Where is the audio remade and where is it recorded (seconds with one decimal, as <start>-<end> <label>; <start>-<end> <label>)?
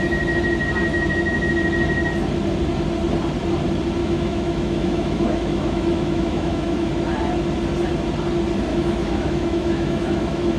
0.0-0.9 recorded; 0.9-1.5 remade; 1.5-4.0 recorded; 4.0-6.9 remade; 6.9-8.7 recorded; 8.7-10.6 remade